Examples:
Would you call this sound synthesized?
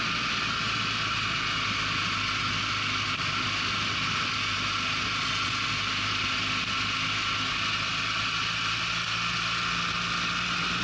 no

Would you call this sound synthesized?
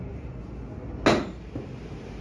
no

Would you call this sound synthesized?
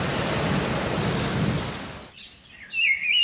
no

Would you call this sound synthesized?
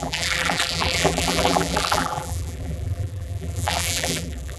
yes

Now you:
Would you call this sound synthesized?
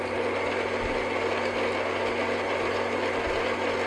no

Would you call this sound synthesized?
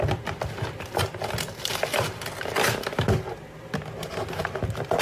no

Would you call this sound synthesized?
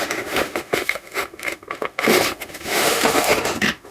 yes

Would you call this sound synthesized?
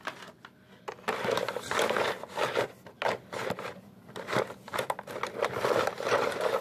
no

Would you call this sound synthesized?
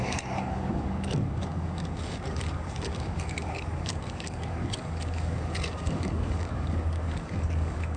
yes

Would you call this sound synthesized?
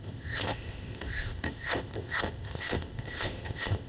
yes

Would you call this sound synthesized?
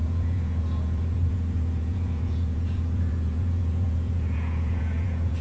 yes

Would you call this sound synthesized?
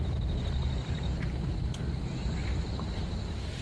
no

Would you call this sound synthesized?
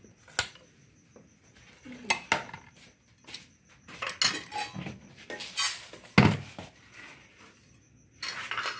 no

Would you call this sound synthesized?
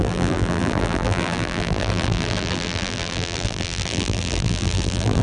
yes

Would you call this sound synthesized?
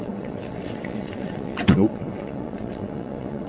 yes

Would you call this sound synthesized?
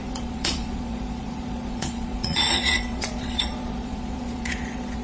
yes